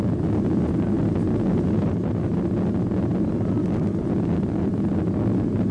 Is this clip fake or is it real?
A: real